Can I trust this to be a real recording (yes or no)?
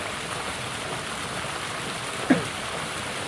yes